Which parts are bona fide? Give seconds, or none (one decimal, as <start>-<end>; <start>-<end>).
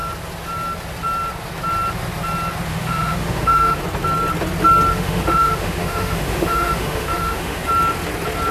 0.0-2.7; 3.8-4.9; 7.7-8.5